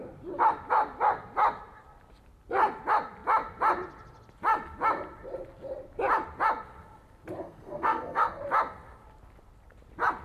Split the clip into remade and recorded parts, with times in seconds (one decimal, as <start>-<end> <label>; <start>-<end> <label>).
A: 0.0-7.4 recorded; 7.4-8.4 remade; 8.4-10.2 recorded